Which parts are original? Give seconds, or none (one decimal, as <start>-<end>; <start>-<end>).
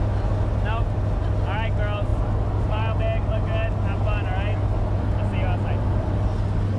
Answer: 0.0-6.8